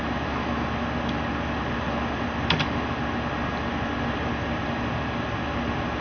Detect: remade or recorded recorded